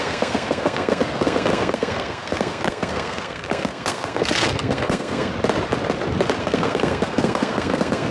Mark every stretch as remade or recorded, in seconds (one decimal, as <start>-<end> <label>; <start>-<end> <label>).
0.0-5.3 remade; 5.3-6.4 recorded; 6.4-8.1 remade